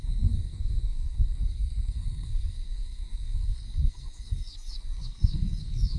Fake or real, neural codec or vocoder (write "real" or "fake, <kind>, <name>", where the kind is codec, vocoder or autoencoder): fake, codec, SNAC